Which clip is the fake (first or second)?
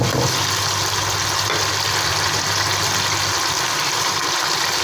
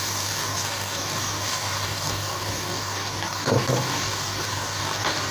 second